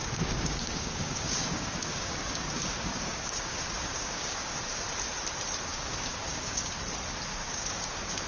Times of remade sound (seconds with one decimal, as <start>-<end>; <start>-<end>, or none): 0.0-4.8; 5.7-6.7; 7.3-8.3